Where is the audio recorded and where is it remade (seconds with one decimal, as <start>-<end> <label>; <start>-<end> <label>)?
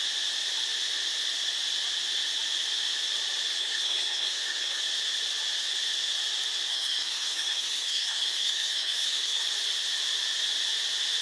0.0-3.6 recorded; 3.6-4.8 remade; 4.8-6.7 recorded; 6.7-9.4 remade; 9.4-11.2 recorded